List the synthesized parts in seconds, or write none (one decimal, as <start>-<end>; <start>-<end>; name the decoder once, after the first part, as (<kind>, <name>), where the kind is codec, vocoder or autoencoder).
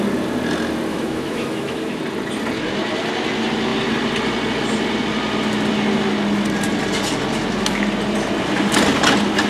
0.9-2.0 (autoencoder, DAC-VAE)